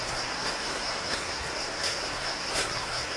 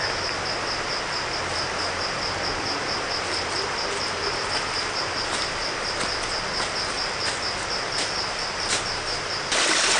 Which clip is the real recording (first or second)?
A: second